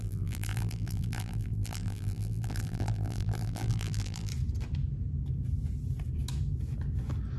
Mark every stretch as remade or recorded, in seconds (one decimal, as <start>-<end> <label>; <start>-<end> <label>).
0.0-4.3 remade; 4.3-7.4 recorded